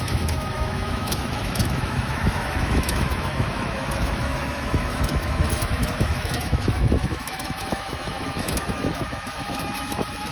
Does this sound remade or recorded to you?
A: remade